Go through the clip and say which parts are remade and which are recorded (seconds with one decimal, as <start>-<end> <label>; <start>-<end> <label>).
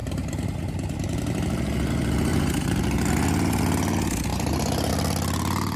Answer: 0.0-1.9 remade; 1.9-2.3 recorded; 2.3-3.1 remade; 3.1-4.3 recorded; 4.3-4.9 remade; 4.9-5.8 recorded